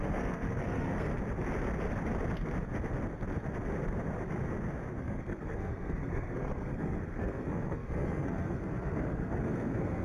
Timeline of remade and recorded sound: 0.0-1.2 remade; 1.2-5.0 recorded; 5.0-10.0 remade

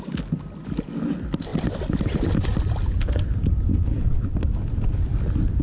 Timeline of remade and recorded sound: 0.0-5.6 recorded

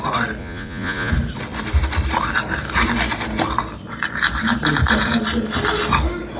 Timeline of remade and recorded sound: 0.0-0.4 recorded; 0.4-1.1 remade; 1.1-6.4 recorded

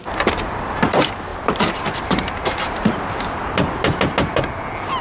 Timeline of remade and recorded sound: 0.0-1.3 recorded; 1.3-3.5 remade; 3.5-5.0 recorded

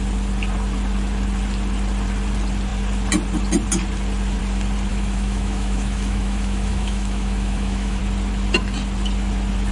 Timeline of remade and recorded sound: 0.0-4.9 recorded; 4.9-8.0 remade; 8.0-9.7 recorded